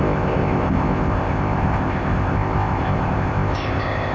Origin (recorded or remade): remade